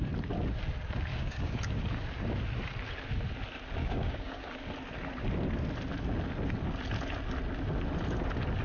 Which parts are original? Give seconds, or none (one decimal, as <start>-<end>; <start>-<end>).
0.0-1.1; 1.8-3.8; 4.5-8.6